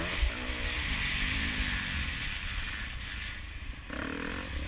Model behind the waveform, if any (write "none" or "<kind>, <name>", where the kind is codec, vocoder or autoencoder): vocoder, BigVGAN v2